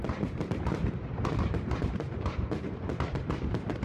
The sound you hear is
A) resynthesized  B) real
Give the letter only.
A